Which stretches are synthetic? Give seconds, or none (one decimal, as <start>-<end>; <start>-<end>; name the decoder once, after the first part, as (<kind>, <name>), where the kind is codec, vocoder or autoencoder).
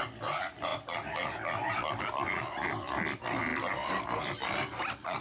0.0-0.7 (vocoder, BigVGAN v2); 2.0-5.2